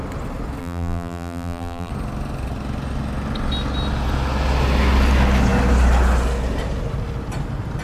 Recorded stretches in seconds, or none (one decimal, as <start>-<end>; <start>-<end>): 0.0-0.6; 1.9-7.8